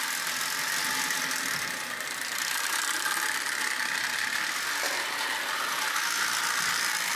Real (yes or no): yes